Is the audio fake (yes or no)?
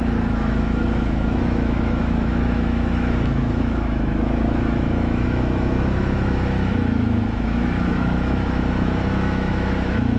yes